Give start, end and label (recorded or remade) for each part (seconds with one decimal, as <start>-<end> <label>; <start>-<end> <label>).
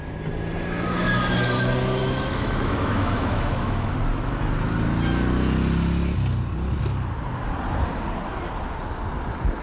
0.0-2.0 recorded; 2.0-3.9 remade; 3.9-9.6 recorded